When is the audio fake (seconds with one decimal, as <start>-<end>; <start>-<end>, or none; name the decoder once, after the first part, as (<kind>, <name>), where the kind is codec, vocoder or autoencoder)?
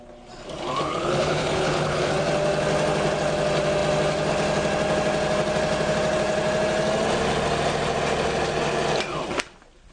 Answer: 0.9-2.1 (codec, HILCodec)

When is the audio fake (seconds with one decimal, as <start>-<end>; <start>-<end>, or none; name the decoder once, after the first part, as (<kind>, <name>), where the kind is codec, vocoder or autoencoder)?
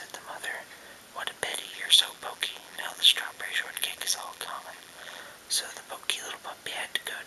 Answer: 1.5-5.2 (vocoder, BigVGAN v2)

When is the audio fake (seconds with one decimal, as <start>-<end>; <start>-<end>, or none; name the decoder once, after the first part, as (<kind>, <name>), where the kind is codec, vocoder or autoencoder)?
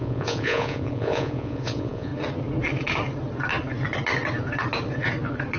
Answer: 0.0-2.1 (vocoder, Vocos)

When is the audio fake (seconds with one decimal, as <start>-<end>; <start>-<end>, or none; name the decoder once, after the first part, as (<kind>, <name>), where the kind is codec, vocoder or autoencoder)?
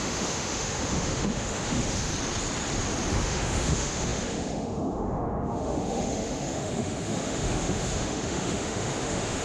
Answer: 0.0-2.1 (autoencoder, DAC-VAE); 3.1-9.4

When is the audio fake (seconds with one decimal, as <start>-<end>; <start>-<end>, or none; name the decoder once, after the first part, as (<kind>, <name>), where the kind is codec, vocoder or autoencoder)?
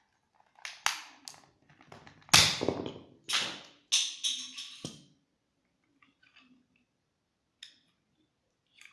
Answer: none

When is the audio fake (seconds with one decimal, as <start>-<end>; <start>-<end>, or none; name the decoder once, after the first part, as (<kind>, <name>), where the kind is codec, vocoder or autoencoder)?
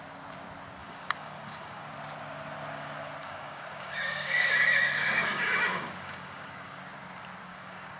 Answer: 0.8-1.8 (codec, DAC); 3.2-6.8; 7.5-8.0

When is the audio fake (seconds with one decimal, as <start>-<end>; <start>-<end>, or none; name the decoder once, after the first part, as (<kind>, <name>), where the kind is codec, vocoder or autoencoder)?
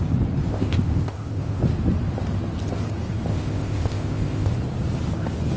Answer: 0.5-1.6 (codec, ZipCodec); 3.3-4.5